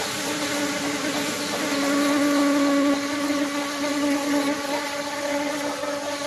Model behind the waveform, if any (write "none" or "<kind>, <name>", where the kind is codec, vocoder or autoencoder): none